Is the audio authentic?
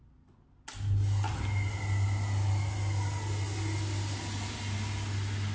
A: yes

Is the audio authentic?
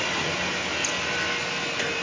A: yes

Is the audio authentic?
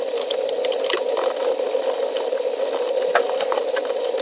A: yes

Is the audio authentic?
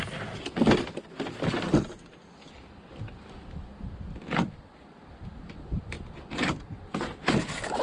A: yes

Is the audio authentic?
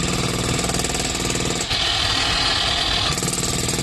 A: yes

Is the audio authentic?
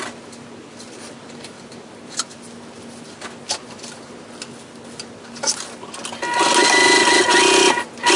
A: yes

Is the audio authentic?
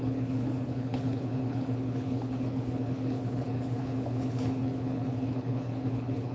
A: no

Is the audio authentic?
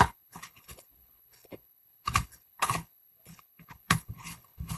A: no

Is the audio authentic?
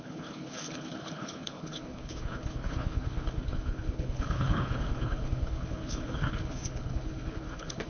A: no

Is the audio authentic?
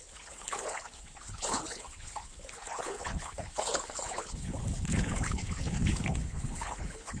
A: no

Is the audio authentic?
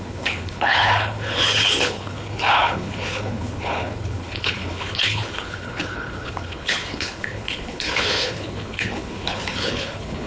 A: no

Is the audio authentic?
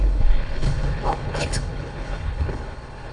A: no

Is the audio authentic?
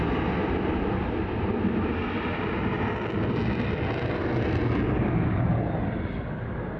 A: yes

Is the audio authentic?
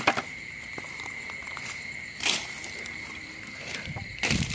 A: yes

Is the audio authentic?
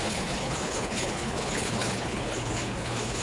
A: no